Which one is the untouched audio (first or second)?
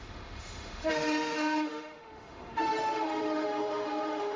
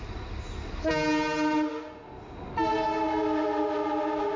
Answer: second